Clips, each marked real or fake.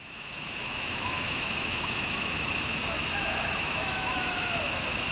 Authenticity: fake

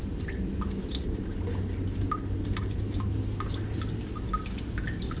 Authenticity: real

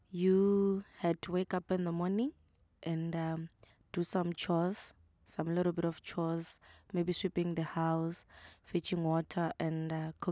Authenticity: real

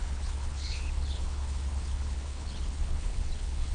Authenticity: fake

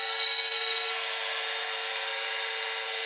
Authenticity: fake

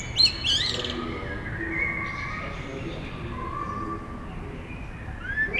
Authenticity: real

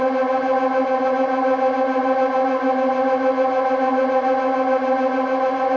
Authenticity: real